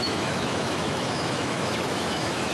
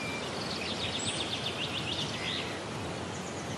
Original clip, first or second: second